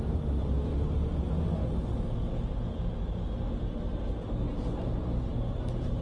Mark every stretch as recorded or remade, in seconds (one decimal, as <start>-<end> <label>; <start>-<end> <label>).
0.0-6.0 recorded